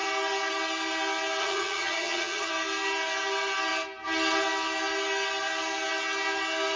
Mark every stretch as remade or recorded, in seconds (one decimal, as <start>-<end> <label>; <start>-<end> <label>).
0.0-1.4 recorded; 1.4-2.5 remade; 2.5-6.8 recorded